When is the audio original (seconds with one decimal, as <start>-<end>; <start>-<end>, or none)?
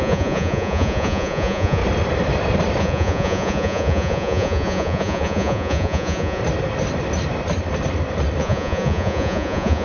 1.8-2.8; 6.4-8.4